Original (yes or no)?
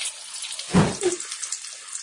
yes